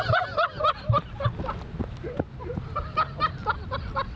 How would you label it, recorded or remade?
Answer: recorded